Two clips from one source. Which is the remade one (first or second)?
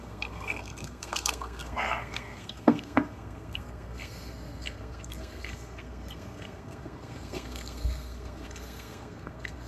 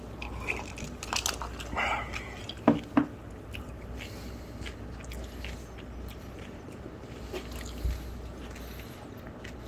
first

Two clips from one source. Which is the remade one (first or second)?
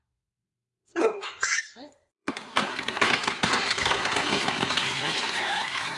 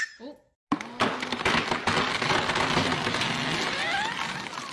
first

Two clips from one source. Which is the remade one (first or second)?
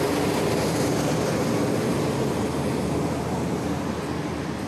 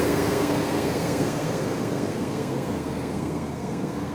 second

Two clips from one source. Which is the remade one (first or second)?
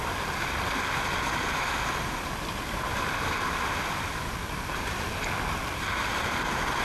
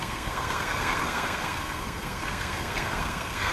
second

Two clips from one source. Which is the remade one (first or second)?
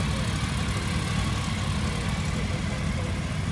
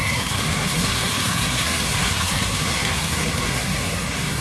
second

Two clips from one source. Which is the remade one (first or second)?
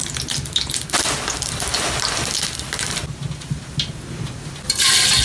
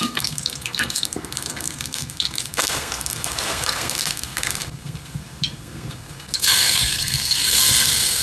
second